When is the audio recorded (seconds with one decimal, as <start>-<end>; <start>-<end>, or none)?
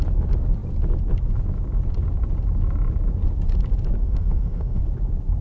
0.0-4.0; 4.8-5.4